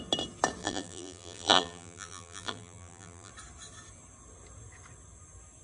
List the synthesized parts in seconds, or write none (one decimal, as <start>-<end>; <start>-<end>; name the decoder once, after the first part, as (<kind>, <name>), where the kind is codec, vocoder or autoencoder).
0.6-3.3 (vocoder, BigVGAN v2)